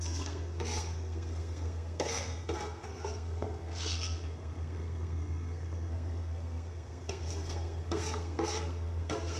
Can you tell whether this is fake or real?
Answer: fake